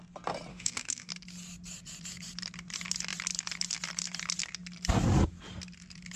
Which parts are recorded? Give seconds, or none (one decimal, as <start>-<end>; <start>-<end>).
0.0-0.5; 1.1-6.2